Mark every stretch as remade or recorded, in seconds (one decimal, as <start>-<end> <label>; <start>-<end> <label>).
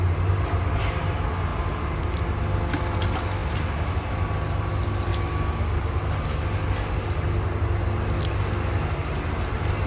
0.0-9.9 recorded